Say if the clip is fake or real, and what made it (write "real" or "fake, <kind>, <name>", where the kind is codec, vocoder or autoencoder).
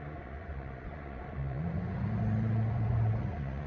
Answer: fake, vocoder, Vocos